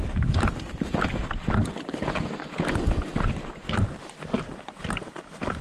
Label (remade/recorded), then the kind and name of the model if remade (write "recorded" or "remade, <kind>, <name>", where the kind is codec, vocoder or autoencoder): recorded